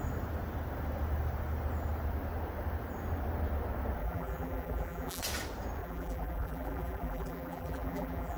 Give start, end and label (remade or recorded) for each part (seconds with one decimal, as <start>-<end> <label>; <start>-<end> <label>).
0.0-4.0 recorded; 4.0-5.2 remade; 5.2-5.8 recorded; 5.8-8.4 remade

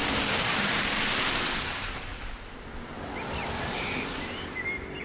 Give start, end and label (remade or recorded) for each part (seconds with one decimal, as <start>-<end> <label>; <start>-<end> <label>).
0.0-2.1 remade; 2.1-3.2 recorded; 3.2-5.0 remade

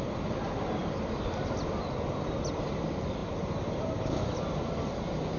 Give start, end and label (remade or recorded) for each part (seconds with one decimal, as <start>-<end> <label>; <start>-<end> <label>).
0.0-5.4 recorded

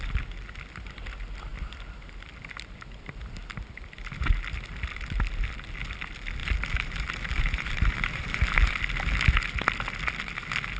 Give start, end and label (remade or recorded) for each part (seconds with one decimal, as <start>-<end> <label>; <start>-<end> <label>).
0.0-6.4 recorded; 6.4-8.7 remade; 8.7-10.8 recorded

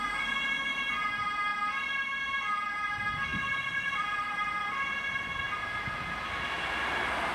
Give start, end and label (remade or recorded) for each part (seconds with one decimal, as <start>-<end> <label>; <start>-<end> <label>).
0.0-3.3 recorded; 3.3-4.4 remade; 4.4-7.3 recorded

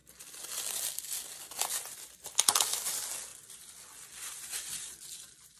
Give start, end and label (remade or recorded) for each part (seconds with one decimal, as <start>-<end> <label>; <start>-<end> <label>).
0.0-5.6 recorded

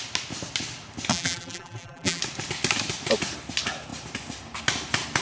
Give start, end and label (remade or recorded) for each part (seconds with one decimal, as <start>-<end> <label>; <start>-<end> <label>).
0.0-1.1 recorded; 1.1-2.2 remade; 2.2-5.2 recorded